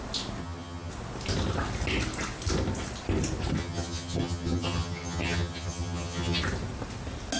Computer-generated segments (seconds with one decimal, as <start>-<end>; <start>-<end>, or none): 0.4-0.9; 3.6-6.4